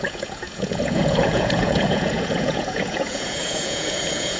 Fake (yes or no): yes